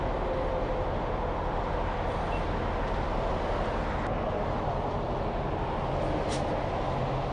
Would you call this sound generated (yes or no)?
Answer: no